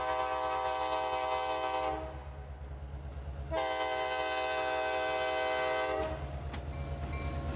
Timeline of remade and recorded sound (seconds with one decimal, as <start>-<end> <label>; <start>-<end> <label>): 0.0-7.6 recorded